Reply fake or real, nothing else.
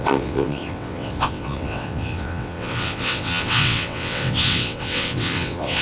fake